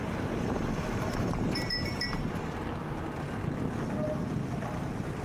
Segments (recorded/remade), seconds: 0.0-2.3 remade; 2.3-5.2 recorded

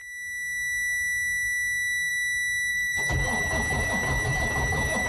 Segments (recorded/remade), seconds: 0.0-2.7 recorded; 2.7-5.1 remade

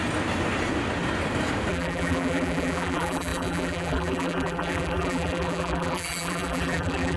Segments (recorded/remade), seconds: 0.0-1.7 recorded; 1.7-7.2 remade

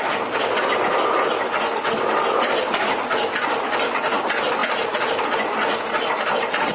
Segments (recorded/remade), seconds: 0.0-6.7 recorded